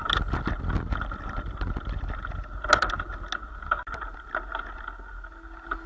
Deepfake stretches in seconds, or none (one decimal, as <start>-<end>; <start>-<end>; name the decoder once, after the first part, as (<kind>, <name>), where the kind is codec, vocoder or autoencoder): none